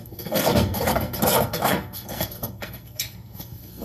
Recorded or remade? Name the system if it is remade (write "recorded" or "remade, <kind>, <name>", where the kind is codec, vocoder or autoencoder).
remade, codec, SNAC